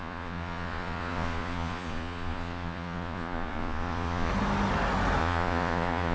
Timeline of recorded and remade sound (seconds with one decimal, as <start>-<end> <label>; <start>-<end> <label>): 0.0-4.3 remade; 4.3-5.2 recorded; 5.2-6.1 remade